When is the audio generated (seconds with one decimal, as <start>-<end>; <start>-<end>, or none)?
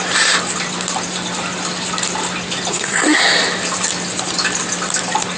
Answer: 2.7-3.2